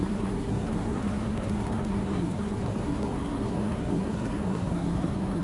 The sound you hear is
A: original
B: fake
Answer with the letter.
B